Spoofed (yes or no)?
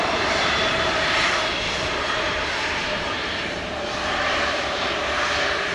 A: yes